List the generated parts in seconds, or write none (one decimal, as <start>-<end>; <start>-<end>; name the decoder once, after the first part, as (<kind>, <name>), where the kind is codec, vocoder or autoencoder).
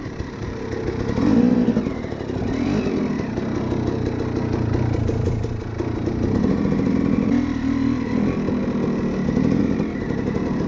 none